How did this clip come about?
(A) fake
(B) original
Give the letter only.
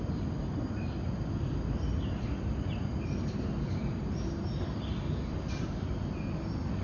B